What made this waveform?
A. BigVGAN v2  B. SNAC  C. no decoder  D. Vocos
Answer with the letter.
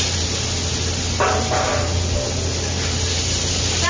C